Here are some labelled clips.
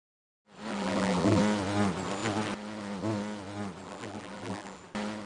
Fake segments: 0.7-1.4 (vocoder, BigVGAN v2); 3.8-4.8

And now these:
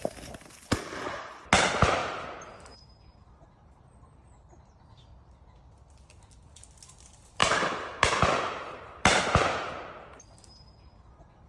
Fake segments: 2.0-3.8 (vocoder, BigVGAN v2); 7.4-9.7